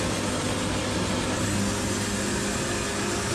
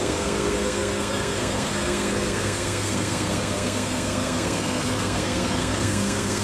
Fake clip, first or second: second